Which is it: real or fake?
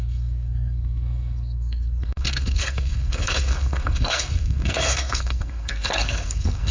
fake